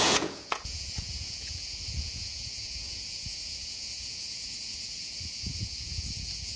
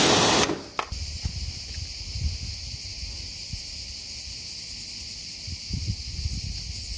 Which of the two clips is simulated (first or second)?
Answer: first